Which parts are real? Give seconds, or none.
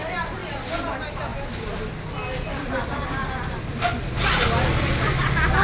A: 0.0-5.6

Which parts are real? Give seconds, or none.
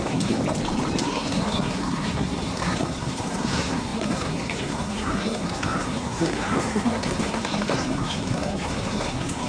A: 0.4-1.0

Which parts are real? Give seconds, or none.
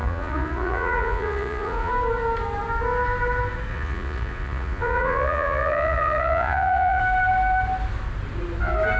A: 1.9-3.7; 7.0-9.0